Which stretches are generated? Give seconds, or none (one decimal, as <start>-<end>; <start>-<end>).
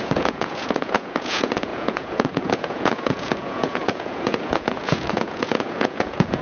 0.0-6.4